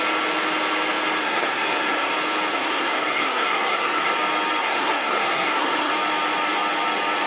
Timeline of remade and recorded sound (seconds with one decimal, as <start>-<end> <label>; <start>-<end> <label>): 0.0-1.2 recorded; 1.2-2.1 remade; 2.1-2.5 recorded; 2.5-4.1 remade; 4.1-4.6 recorded; 4.6-5.9 remade; 5.9-7.3 recorded